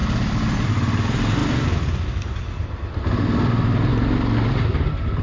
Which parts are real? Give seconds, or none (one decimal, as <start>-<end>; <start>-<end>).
0.0-5.2